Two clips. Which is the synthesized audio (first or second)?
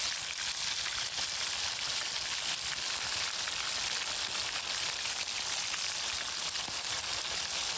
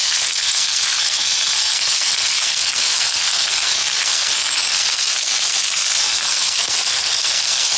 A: second